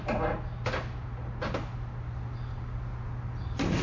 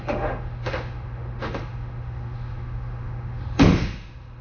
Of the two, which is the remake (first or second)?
second